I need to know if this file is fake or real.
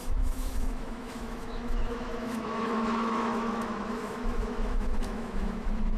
fake